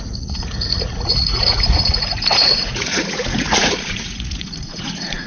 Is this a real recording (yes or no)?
no